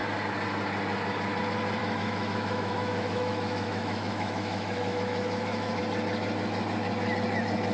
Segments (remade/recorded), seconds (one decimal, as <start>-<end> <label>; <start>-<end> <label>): 0.0-1.8 recorded; 1.8-5.8 remade; 5.8-7.7 recorded